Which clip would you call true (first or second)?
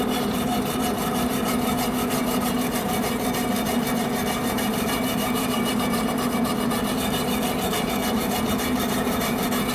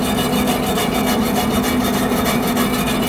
second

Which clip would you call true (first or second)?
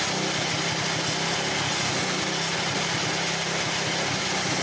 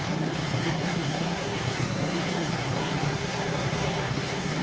first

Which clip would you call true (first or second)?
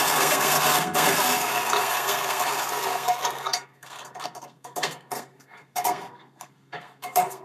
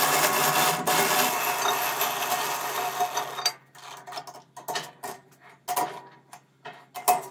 second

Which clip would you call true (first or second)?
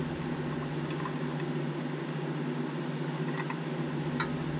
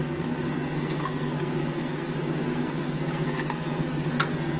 first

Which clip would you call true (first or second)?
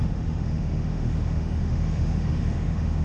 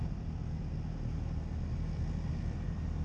second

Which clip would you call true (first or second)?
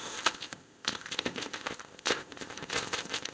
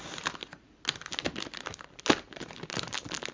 second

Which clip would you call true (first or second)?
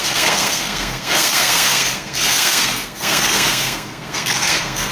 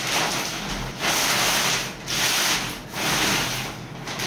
second